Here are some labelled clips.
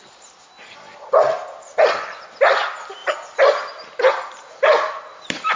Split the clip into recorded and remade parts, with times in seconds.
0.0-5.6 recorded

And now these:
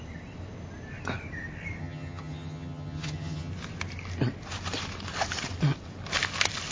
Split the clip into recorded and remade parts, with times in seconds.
0.0-1.8 recorded; 1.8-3.5 remade; 3.5-6.7 recorded

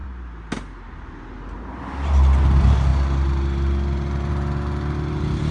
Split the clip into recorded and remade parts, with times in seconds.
0.0-5.5 recorded

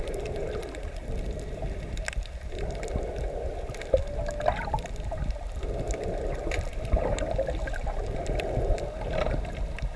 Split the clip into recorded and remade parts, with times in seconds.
0.0-10.0 recorded

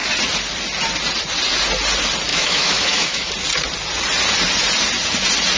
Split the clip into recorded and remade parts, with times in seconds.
0.0-2.3 recorded; 2.3-3.3 remade; 3.3-5.6 recorded